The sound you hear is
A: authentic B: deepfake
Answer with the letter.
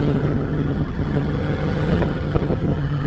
B